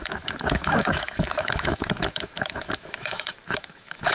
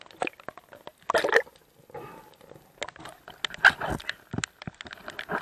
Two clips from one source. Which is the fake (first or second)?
first